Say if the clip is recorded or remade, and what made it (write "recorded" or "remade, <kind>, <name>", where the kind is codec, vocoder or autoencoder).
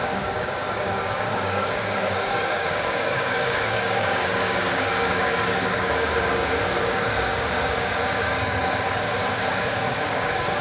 remade, codec, DAC